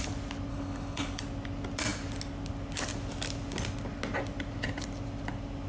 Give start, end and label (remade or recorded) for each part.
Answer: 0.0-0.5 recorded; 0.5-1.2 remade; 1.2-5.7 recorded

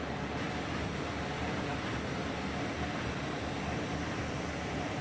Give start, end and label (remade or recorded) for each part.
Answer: 0.0-5.0 recorded